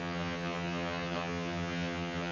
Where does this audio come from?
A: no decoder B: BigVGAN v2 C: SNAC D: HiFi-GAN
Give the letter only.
D